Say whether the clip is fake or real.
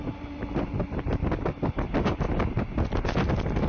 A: real